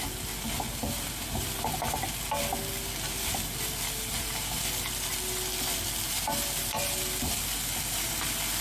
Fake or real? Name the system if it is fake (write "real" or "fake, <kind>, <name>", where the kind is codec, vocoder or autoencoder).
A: real